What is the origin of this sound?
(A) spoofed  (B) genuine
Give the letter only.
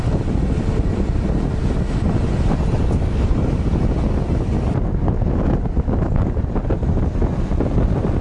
B